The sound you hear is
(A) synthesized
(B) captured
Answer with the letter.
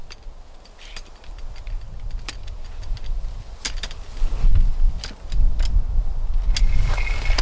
B